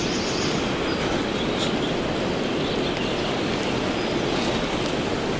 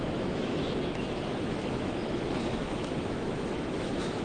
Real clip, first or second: first